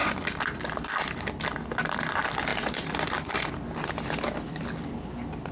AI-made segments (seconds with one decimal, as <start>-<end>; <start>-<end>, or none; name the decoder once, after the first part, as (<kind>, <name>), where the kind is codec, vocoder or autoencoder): none